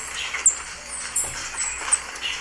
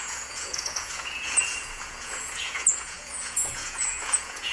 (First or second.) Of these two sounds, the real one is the first